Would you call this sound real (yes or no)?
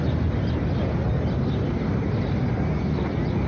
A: yes